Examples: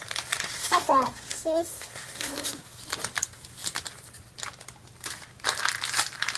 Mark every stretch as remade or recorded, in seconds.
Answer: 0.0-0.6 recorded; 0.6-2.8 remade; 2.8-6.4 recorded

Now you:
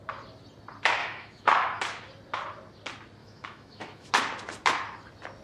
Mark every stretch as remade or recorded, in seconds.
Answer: 0.0-1.0 recorded; 1.0-1.8 remade; 1.8-3.2 recorded; 3.2-4.1 remade; 4.1-5.4 recorded

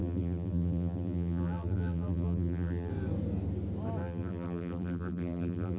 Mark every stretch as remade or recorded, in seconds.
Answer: 0.0-2.9 remade; 2.9-4.0 recorded; 4.0-5.8 remade